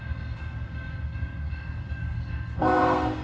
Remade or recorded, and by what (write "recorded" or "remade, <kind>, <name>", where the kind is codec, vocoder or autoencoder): remade, codec, SNAC